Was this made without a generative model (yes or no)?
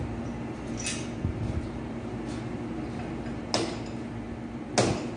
yes